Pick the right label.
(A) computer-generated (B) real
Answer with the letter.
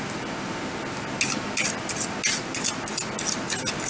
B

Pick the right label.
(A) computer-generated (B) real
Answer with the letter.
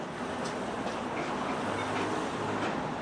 B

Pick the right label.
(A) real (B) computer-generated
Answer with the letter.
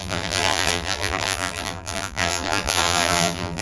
B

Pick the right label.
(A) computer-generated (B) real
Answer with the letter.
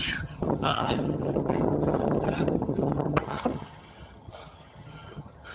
A